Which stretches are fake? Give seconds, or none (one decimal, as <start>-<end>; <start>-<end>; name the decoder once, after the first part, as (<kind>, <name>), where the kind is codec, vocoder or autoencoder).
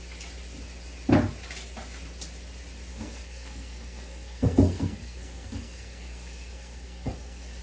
2.9-7.6 (codec, SNAC)